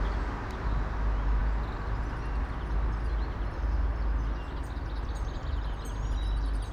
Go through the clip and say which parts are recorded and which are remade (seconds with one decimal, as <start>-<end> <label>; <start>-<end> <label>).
0.0-6.7 recorded